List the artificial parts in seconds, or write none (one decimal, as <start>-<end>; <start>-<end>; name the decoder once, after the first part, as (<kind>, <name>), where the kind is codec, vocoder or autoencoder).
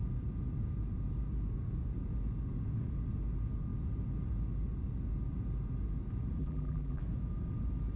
6.4-7.0 (vocoder, BigVGAN v2)